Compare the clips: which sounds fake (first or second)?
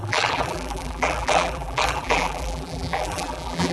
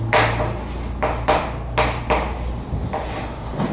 first